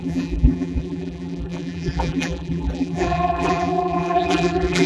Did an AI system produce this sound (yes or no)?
yes